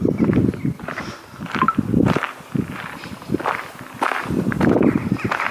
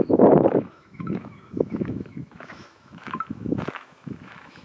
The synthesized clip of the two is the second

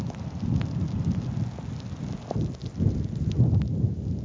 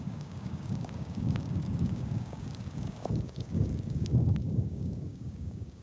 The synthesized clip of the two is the second